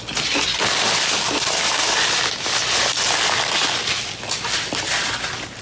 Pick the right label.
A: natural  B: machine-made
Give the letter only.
A